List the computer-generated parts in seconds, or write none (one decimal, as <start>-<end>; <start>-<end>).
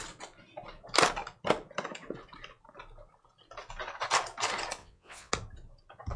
4.8-5.3